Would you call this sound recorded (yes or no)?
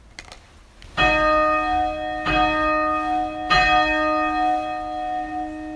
yes